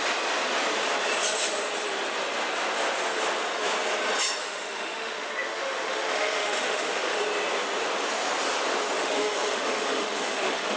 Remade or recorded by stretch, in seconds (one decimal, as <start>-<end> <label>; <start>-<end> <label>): 0.0-4.4 recorded; 4.4-7.2 remade; 7.2-9.0 recorded; 9.0-10.8 remade